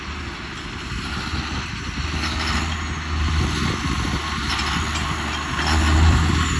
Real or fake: real